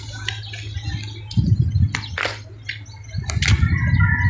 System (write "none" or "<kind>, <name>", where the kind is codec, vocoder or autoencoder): none